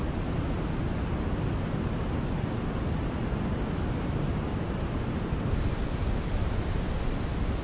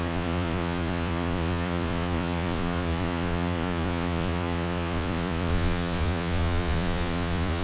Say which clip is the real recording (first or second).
first